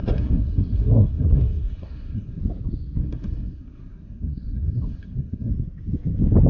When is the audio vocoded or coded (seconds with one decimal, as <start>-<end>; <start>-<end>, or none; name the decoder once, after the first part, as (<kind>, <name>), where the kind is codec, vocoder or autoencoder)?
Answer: 0.0-2.4 (codec, SNAC); 3.0-5.5